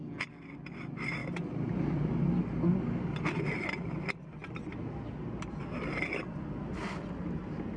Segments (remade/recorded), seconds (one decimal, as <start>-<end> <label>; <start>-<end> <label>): 0.0-7.8 recorded